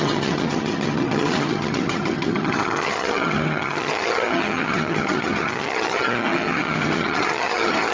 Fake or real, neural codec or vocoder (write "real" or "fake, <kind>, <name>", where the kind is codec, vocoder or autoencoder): fake, vocoder, HiFi-GAN